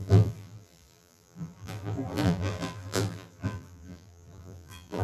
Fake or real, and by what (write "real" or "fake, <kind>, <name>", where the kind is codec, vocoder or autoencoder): fake, vocoder, BigVGAN v2